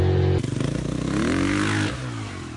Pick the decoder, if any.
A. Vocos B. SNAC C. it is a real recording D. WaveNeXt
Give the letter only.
C